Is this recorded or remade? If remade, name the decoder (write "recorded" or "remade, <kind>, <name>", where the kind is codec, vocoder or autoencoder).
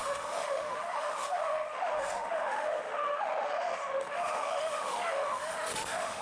remade, autoencoder, DAC-VAE